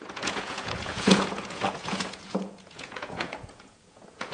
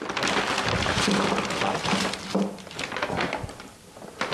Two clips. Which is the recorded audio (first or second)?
second